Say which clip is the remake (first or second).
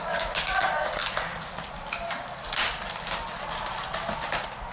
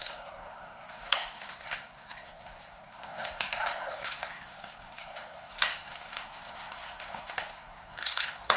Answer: second